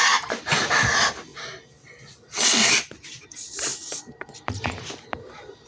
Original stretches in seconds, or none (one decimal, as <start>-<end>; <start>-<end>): 1.3-3.2; 3.7-4.4